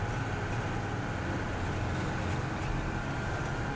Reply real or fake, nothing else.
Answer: real